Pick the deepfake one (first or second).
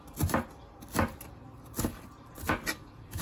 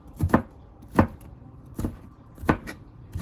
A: second